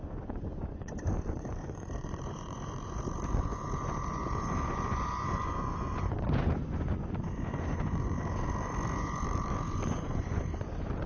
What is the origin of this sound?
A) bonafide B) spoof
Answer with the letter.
B